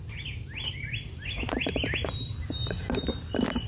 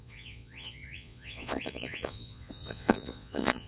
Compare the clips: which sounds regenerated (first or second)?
second